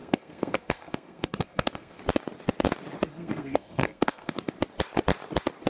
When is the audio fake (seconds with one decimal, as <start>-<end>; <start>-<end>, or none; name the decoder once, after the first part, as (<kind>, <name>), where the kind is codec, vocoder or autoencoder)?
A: 0.0-2.0 (codec, SNAC); 3.1-4.5